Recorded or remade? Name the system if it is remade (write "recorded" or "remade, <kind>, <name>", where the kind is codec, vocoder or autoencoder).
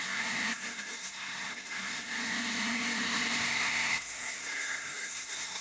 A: remade, codec, SNAC